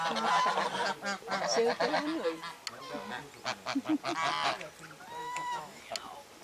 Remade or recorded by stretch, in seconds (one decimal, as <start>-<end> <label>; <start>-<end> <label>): 0.0-5.2 recorded; 5.2-5.8 remade; 5.8-6.4 recorded